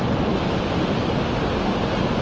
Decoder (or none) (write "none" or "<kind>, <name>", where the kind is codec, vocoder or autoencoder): none